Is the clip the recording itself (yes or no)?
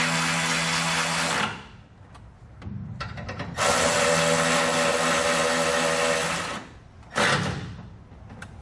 yes